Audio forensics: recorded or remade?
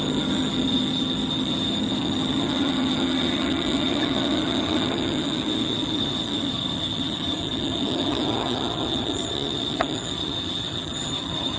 remade